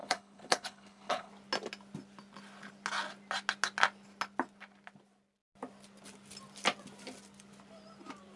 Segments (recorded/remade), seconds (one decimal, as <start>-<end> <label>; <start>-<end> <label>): 0.0-1.3 remade; 1.3-8.4 recorded